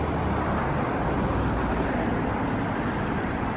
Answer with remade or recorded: recorded